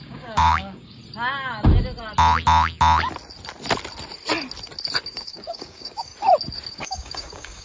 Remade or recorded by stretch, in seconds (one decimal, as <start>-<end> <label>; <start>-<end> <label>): 0.0-1.0 remade; 1.0-5.1 recorded; 5.1-6.1 remade; 6.1-6.7 recorded; 6.7-7.6 remade